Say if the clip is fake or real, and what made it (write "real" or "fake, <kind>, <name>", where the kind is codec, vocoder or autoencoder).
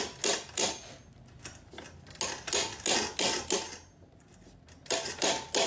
real